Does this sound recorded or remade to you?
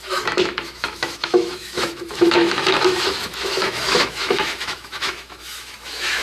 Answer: remade